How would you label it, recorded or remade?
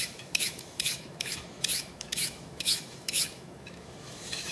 remade